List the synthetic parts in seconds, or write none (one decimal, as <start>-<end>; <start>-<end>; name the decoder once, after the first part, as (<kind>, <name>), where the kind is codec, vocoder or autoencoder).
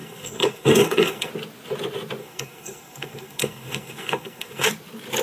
0.0-1.3 (codec, SNAC); 2.2-4.7